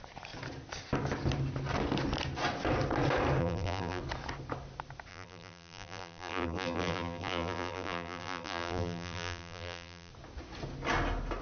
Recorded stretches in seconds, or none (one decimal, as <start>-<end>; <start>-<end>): 0.0-3.4; 4.0-5.1; 10.1-11.4

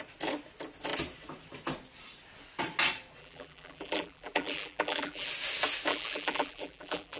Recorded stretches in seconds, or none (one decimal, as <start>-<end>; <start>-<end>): 0.0-3.2; 5.3-5.9

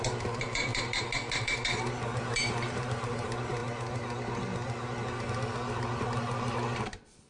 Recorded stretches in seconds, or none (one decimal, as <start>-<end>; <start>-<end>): 0.7-1.4; 3.6-7.3

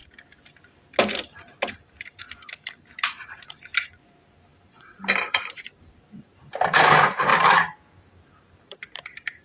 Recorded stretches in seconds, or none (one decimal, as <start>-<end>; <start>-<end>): 0.0-1.1; 7.3-8.0